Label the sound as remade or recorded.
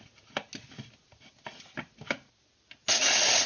recorded